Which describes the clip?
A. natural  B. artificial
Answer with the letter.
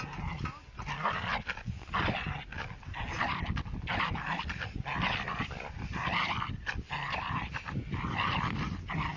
A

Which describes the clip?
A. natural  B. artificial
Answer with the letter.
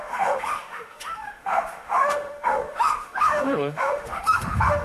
B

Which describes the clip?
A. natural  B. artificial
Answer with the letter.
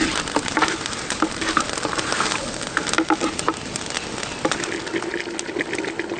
A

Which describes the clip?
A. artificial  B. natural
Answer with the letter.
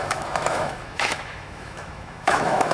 A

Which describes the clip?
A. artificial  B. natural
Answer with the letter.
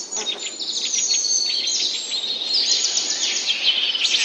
B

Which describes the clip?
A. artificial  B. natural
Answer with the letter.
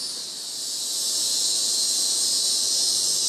B